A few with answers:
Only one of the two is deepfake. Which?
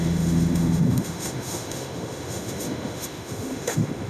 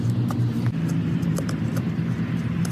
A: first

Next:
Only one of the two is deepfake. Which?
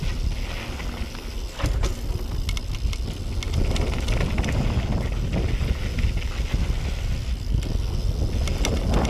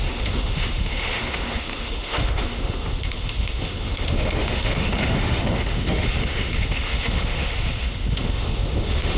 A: second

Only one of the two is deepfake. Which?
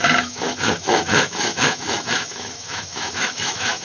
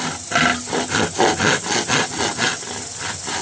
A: first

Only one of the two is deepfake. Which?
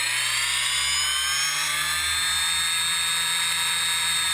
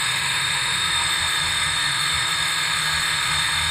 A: second